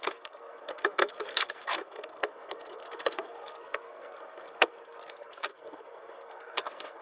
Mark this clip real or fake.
fake